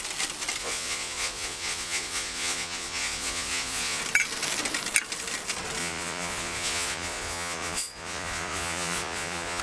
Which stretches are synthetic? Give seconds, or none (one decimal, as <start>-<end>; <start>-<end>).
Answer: 0.6-4.0; 5.8-9.6